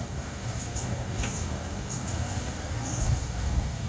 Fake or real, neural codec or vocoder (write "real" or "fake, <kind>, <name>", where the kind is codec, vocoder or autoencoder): fake, codec, DAC